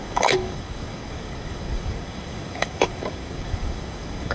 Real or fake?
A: fake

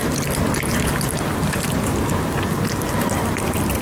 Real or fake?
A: fake